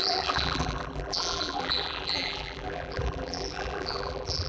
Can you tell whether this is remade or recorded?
remade